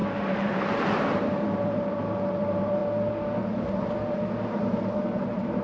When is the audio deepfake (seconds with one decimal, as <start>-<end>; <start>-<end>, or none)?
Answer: 0.0-2.8; 4.6-5.6

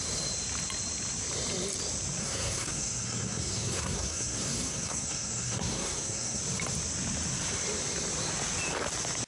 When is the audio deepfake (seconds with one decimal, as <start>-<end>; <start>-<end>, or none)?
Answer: 2.2-6.4

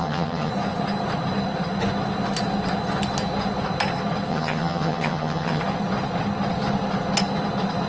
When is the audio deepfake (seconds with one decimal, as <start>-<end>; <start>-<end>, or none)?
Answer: 0.0-0.5; 4.3-5.6

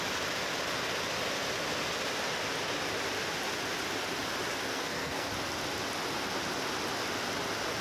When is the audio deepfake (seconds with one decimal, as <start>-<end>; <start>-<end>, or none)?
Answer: 4.7-5.3

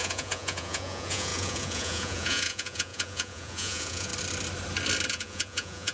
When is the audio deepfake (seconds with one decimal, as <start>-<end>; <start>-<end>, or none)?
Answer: 0.0-4.1; 5.1-5.9

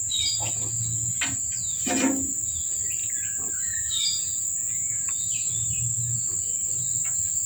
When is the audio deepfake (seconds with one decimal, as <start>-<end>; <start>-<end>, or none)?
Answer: 3.0-5.5

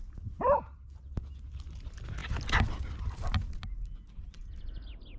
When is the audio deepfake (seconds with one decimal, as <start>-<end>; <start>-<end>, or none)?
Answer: none

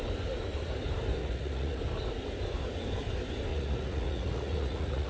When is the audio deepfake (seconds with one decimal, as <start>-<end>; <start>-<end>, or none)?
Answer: 1.2-1.8; 3.5-5.1